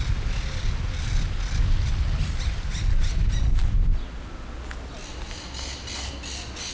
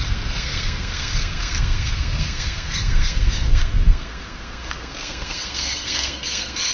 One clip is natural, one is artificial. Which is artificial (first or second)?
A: second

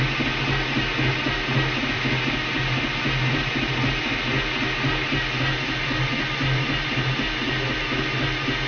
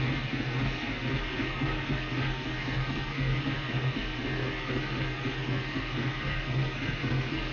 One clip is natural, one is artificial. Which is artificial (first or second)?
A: second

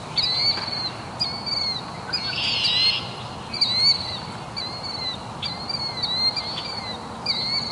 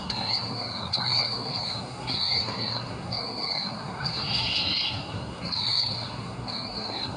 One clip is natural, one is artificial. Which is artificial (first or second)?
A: second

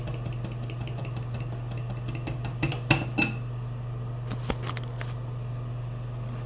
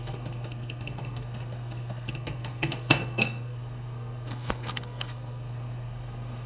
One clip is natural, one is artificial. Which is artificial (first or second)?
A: second